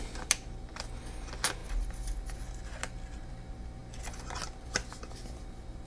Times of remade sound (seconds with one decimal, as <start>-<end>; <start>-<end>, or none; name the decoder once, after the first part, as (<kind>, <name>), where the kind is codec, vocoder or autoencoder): none

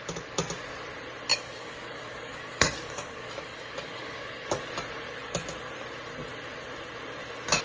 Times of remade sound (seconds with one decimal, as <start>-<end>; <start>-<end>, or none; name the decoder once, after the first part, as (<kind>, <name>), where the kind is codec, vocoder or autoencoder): 1.3-4.7 (codec, DAC)

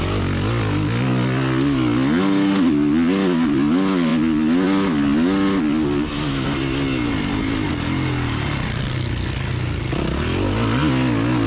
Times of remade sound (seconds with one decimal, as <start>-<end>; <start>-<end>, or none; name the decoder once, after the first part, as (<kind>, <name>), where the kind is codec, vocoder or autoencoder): none

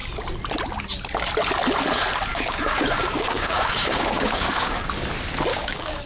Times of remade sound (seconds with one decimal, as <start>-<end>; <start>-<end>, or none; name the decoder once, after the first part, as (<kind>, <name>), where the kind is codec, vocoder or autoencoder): 2.3-4.8 (codec, DAC); 5.5-6.1

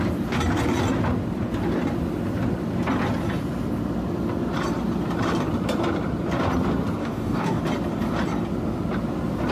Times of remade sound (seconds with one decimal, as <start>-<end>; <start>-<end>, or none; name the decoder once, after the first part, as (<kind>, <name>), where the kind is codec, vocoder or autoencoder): 7.0-7.6 (codec, DAC)